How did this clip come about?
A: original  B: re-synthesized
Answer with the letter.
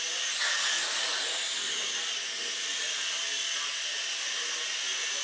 A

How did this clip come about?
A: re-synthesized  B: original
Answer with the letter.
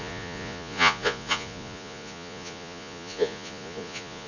A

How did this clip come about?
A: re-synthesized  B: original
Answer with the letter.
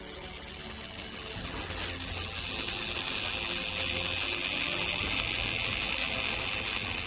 B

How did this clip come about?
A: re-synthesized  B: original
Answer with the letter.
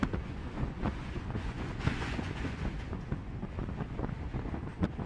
A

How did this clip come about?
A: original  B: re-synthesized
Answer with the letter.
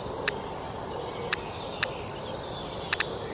A